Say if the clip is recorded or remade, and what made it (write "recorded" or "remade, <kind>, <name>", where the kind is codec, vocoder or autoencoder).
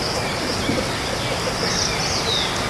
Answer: recorded